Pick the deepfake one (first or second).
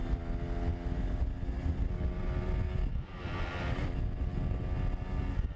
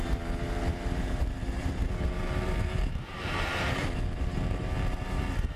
second